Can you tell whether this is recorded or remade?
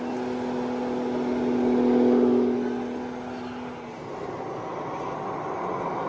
recorded